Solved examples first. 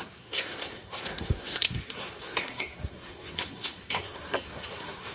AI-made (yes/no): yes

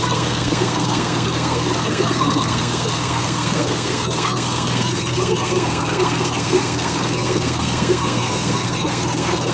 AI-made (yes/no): yes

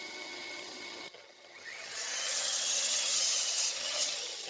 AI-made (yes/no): yes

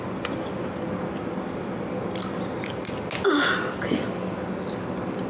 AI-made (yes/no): no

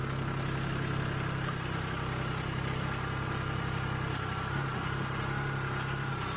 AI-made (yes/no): no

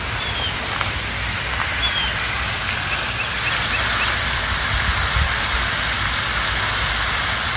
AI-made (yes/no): no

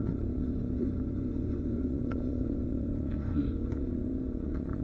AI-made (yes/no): yes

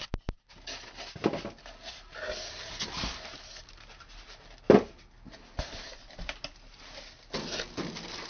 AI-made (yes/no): no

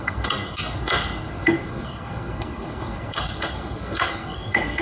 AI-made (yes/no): yes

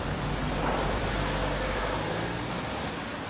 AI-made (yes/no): no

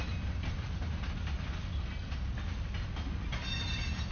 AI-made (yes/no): no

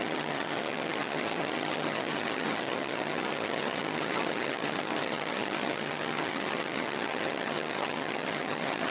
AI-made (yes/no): yes